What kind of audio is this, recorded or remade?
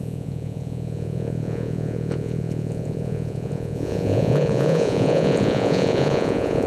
remade